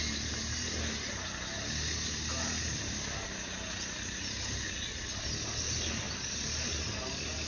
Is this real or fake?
real